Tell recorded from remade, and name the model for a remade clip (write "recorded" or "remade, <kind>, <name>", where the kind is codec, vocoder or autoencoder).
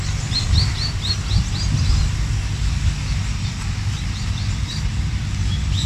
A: recorded